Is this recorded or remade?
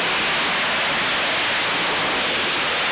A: recorded